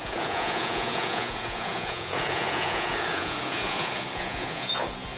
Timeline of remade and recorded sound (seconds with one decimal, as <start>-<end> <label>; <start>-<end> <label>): 0.0-5.2 remade